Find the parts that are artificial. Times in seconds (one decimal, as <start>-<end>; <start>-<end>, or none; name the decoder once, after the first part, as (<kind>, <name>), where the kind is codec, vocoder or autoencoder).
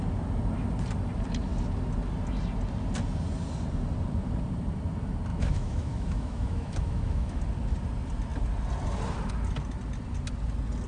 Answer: 5.3-7.4 (autoencoder, DAC-VAE)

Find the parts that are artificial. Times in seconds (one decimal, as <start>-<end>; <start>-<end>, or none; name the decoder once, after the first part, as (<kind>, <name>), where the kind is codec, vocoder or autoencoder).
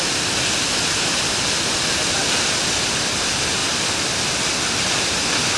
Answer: none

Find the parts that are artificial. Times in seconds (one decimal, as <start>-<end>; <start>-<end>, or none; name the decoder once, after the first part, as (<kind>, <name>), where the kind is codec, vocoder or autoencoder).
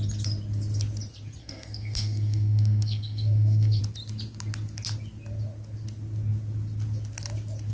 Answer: 1.4-3.8 (codec, SNAC)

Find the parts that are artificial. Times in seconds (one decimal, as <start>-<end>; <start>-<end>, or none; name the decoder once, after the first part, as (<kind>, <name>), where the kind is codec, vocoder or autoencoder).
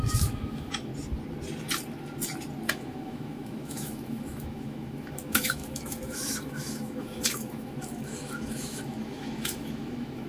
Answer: 0.0-0.9 (autoencoder, DAC-VAE); 2.7-10.3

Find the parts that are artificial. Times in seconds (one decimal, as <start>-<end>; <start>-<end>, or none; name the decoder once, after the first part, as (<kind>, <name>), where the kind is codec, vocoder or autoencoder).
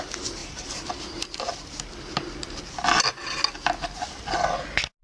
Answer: 0.4-2.6 (vocoder, BigVGAN v2)